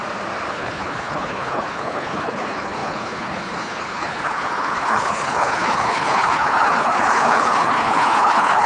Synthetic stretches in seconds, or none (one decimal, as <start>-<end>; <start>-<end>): 0.5-8.7